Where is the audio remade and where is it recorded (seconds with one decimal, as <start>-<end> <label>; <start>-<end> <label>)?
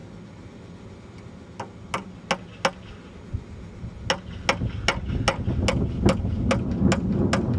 0.0-7.6 recorded